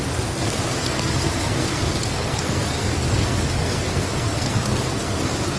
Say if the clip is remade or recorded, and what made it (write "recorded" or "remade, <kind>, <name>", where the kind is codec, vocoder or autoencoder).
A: remade, codec, SNAC